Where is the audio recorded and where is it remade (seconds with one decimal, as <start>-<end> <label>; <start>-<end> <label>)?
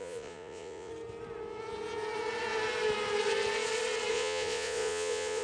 0.0-0.9 remade; 0.9-4.1 recorded; 4.1-5.4 remade